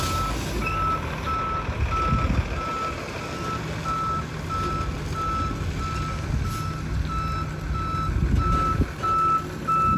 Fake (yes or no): no